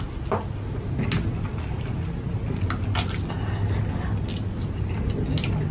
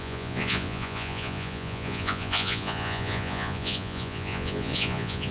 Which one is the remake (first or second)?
second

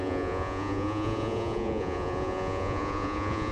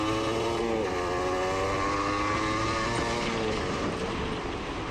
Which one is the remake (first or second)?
first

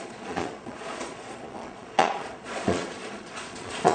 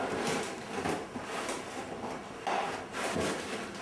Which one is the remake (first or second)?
first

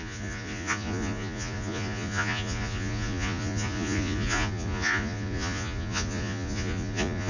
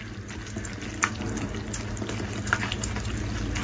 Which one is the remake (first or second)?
first